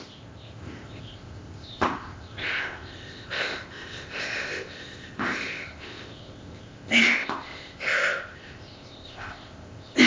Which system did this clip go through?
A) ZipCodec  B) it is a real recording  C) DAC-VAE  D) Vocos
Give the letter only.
A